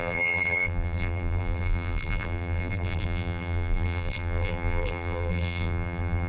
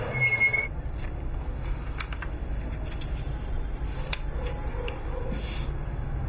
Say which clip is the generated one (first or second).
first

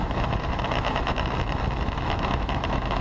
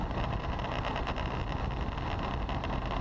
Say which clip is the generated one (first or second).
first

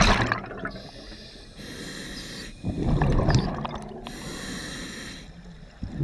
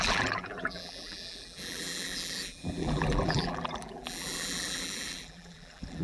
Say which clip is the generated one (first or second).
second